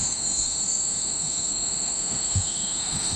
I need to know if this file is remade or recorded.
remade